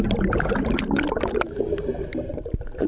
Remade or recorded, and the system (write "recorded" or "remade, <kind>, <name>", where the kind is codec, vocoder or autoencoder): recorded